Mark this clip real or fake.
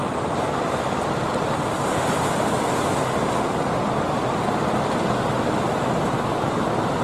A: real